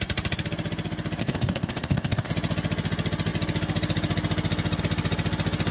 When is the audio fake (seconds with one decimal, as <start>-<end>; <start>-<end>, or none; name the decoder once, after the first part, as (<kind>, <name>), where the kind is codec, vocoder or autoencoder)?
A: 1.2-2.3 (codec, ZipCodec)